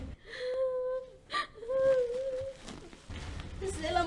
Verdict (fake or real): real